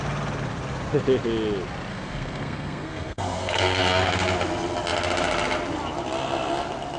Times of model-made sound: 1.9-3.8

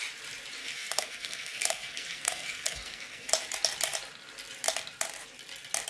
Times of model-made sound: 0.6-3.3